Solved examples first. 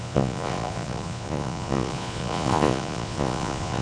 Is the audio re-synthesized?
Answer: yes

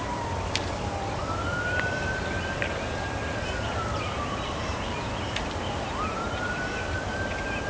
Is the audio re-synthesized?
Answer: yes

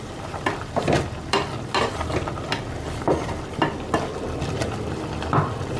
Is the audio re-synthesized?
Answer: no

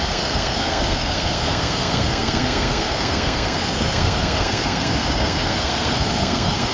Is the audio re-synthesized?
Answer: yes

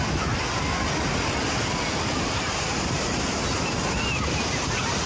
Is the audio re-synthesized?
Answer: no